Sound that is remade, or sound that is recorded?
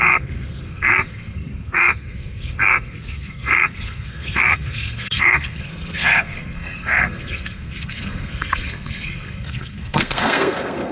remade